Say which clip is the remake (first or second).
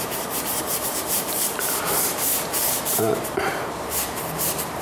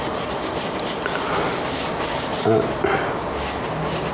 first